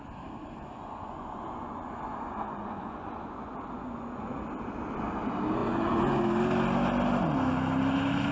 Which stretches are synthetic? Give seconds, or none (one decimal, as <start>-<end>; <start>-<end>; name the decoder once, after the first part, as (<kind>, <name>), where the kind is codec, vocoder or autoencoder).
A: 0.4-4.4 (vocoder, Vocos); 5.6-6.2